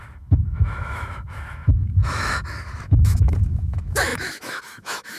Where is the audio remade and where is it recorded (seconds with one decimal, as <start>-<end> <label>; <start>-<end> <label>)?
0.0-5.2 remade